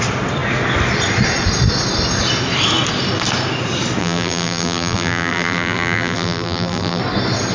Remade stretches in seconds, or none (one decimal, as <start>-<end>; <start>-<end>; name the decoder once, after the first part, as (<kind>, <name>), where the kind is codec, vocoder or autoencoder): 4.0-7.0 (vocoder, BigVGAN v2)